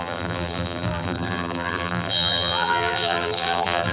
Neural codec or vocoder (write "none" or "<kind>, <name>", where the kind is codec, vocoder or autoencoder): vocoder, BigVGAN v2